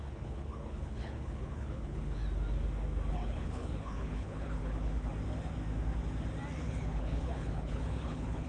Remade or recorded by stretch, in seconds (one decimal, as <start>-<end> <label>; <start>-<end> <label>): 0.0-2.2 remade; 2.2-3.1 recorded; 3.1-5.1 remade; 5.1-6.6 recorded; 6.6-8.5 remade